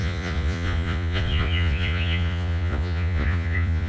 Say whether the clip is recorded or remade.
remade